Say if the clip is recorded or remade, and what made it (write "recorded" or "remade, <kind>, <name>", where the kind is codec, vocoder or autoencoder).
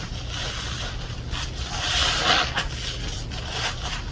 recorded